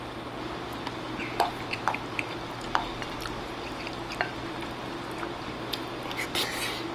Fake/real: real